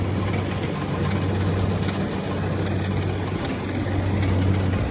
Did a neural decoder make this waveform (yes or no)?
no